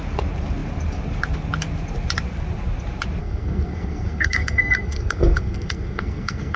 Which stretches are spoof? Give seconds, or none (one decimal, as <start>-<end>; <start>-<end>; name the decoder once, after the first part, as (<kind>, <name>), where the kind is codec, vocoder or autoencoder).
3.2-6.6 (codec, SNAC)

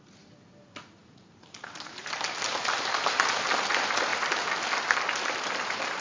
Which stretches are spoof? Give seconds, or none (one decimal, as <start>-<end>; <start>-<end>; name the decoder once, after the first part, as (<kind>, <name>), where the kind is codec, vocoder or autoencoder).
none

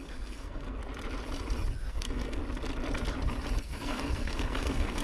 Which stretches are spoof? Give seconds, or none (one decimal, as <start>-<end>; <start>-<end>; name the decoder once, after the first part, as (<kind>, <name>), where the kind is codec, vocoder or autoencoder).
0.0-0.8 (codec, SNAC); 1.9-2.4; 3.6-5.0

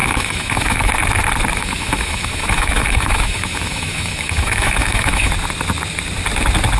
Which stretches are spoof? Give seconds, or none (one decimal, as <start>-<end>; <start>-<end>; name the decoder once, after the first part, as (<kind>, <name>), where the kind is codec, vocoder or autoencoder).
0.0-0.9 (autoencoder, DAC-VAE); 1.6-5.3

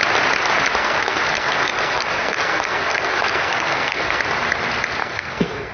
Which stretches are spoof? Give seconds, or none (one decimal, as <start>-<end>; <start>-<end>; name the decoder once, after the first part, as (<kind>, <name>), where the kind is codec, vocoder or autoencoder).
0.8-4.2 (codec, SNAC); 5.0-5.7

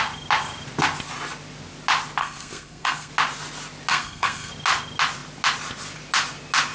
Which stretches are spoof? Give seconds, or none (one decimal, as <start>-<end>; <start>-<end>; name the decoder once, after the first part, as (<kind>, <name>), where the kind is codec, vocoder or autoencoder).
2.2-3.1 (codec, SNAC); 3.9-4.5